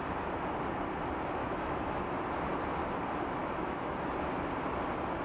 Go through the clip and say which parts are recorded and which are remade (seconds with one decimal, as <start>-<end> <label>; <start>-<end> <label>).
0.0-1.4 recorded; 1.4-1.9 remade; 1.9-3.4 recorded; 3.4-3.9 remade; 3.9-5.2 recorded

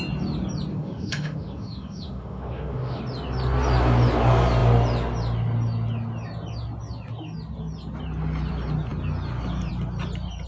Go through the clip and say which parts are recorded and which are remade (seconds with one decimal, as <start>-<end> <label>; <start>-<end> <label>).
0.0-0.7 recorded; 0.7-3.0 remade; 3.0-10.5 recorded

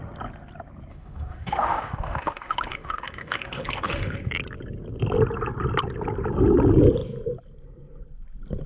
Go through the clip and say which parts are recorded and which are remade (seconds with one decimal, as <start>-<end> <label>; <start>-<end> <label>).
0.0-0.9 recorded; 0.9-4.3 remade; 4.3-8.7 recorded

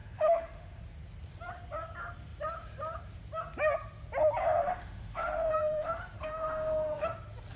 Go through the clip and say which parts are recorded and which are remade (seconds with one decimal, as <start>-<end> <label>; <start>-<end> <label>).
0.0-0.8 remade; 0.8-4.6 recorded; 4.6-7.1 remade; 7.1-7.6 recorded